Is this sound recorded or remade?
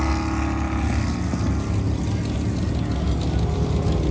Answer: recorded